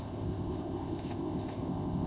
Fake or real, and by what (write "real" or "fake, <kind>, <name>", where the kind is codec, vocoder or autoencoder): fake, codec, ZipCodec